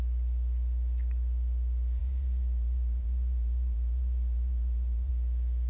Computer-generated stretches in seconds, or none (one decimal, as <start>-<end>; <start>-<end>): 2.0-5.1